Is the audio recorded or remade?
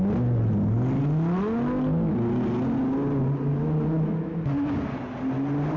recorded